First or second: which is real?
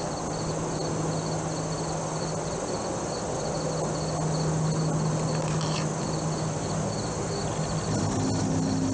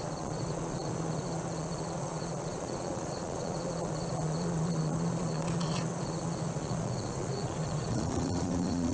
first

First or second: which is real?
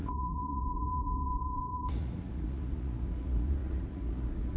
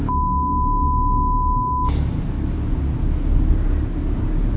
second